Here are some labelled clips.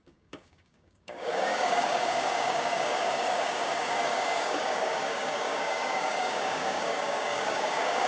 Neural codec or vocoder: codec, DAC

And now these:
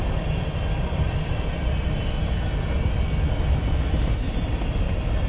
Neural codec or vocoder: none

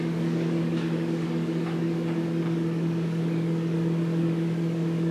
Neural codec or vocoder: codec, DAC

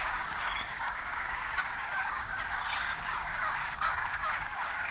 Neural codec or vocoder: codec, DAC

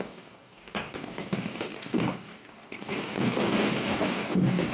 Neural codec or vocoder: codec, DAC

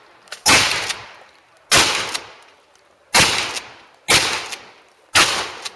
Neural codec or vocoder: none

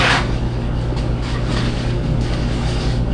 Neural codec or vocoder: codec, DAC